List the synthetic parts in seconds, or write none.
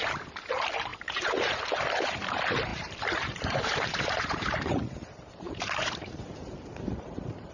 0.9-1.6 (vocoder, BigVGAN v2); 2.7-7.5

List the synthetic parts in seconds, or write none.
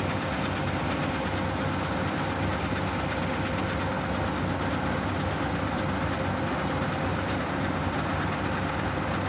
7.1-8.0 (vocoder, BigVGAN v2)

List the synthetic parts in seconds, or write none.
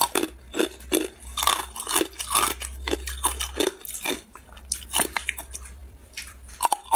5.8-6.5 (vocoder, BigVGAN v2)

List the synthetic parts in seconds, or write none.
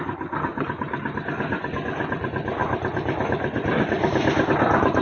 0.5-1.2 (vocoder, BigVGAN v2); 2.6-4.5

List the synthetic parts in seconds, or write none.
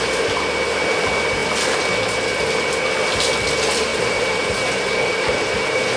3.9-6.0 (vocoder, BigVGAN v2)